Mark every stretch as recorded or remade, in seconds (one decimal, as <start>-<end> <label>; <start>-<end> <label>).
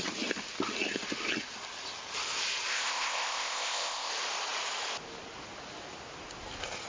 0.0-2.7 recorded; 2.7-4.1 remade; 4.1-6.9 recorded